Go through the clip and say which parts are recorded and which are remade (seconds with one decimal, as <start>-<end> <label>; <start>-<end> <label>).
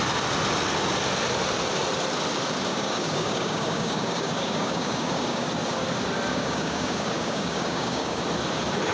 0.0-2.7 recorded; 2.7-5.5 remade; 5.5-6.3 recorded; 6.3-8.2 remade; 8.2-8.9 recorded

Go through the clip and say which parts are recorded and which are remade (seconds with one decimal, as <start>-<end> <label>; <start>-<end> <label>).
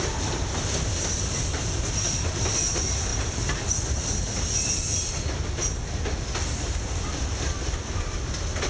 0.0-8.7 recorded